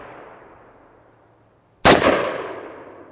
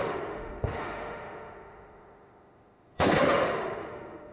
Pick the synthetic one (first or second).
second